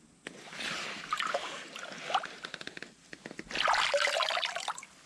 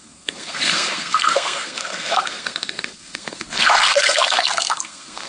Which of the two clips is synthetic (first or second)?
second